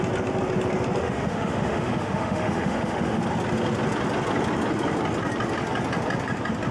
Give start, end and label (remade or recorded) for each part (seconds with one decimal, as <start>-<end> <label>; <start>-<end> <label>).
0.0-1.0 recorded; 1.0-3.2 remade; 3.2-6.7 recorded